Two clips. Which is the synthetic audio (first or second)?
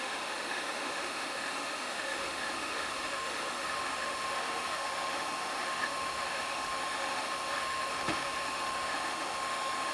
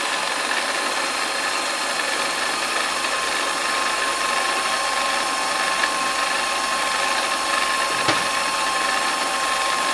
first